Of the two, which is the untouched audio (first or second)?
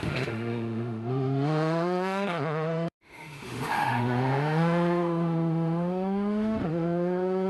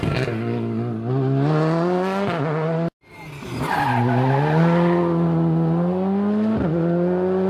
second